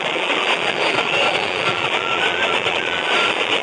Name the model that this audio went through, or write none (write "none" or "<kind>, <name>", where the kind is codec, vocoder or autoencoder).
vocoder, Vocos